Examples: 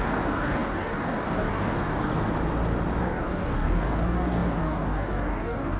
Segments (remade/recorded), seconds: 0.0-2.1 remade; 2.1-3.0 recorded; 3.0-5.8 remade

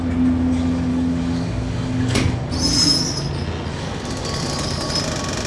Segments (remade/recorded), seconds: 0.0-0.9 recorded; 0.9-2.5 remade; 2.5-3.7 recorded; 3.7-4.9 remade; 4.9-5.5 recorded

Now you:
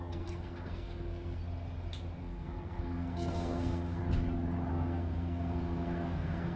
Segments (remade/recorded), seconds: 0.0-1.4 remade; 1.4-2.2 recorded; 2.2-4.0 remade; 4.0-4.7 recorded; 4.7-6.6 remade

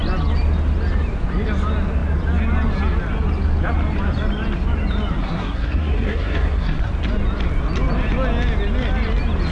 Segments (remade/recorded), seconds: 0.0-5.2 recorded; 5.2-6.9 remade; 6.9-9.5 recorded

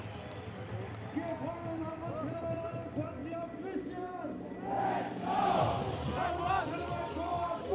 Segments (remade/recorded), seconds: 0.0-7.7 recorded

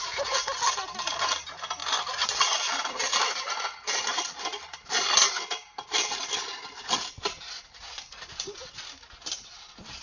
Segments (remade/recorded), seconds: 0.0-10.0 remade

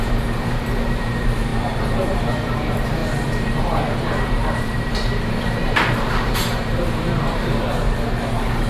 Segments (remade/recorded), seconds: 0.0-8.7 remade